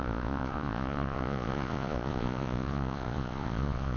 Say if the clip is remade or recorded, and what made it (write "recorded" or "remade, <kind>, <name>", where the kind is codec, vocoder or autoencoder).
remade, vocoder, Vocos